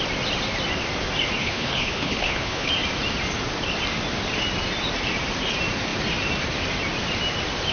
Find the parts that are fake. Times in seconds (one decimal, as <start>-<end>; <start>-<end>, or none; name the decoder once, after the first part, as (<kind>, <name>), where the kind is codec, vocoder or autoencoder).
1.4-2.7 (codec, HILCodec)